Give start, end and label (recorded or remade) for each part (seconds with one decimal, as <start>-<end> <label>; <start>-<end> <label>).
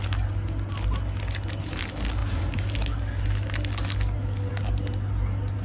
0.0-5.6 recorded